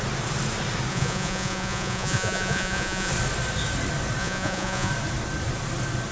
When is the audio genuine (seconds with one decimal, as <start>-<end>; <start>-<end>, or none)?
0.0-0.9; 3.1-4.2; 4.9-6.1